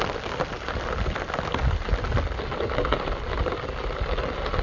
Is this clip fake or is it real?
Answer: real